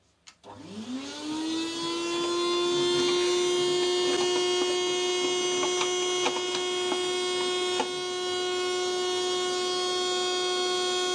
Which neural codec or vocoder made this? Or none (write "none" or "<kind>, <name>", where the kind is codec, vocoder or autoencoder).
none